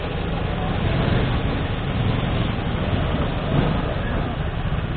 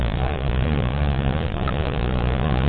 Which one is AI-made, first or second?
second